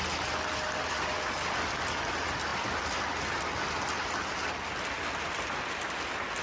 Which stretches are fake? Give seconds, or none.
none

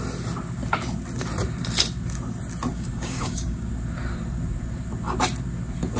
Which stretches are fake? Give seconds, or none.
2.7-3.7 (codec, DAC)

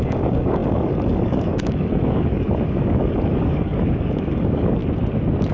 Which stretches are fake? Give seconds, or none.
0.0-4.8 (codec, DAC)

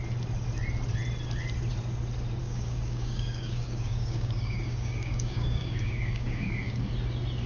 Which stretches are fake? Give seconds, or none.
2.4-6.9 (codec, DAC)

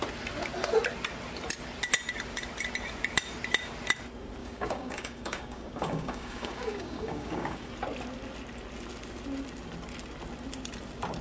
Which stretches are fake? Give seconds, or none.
4.4-7.7 (codec, DAC)

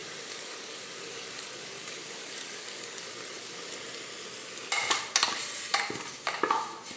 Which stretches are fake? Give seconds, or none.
0.0-3.7 (codec, DAC)

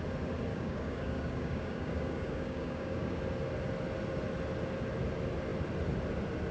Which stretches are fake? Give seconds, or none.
0.5-3.2 (codec, DAC)

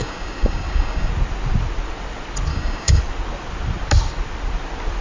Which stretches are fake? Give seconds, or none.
0.0-1.1 (codec, DAC); 2.5-3.0